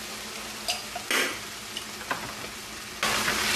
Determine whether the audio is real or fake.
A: real